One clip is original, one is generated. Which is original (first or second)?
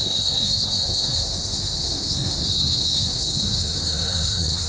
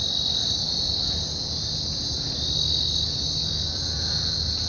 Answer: second